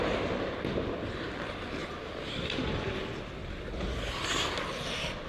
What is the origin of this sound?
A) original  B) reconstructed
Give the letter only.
A